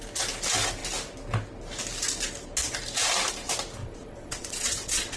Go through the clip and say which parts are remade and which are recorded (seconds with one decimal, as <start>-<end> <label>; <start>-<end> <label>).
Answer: 0.0-3.8 recorded; 3.8-5.2 remade